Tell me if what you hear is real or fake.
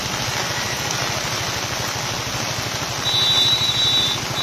real